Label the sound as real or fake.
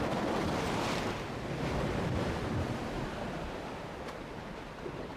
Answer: real